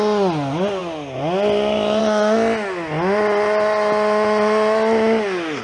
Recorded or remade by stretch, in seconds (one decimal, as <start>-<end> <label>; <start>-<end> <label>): 0.0-5.6 recorded